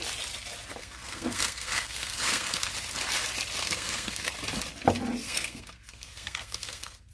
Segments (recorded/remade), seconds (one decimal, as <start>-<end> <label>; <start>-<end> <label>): 0.0-0.8 recorded; 0.8-2.7 remade; 2.7-3.6 recorded; 3.6-4.3 remade; 4.3-5.2 recorded; 5.2-7.1 remade